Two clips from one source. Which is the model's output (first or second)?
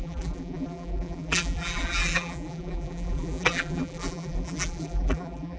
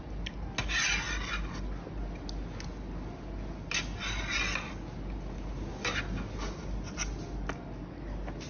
first